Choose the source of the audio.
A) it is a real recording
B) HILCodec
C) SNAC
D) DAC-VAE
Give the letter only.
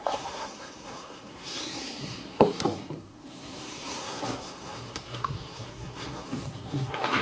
C